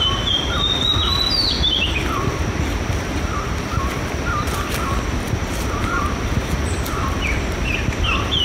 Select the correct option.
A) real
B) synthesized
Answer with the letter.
A